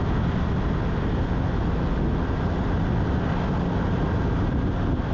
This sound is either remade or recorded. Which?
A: recorded